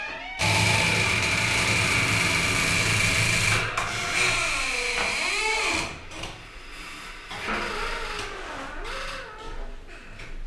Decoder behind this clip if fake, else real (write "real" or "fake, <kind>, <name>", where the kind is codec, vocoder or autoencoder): real